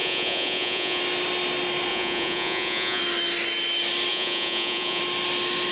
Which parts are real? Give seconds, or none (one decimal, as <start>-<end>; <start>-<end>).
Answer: 1.0-1.9; 3.0-4.1; 5.0-5.7